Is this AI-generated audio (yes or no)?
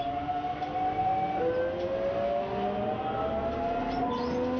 no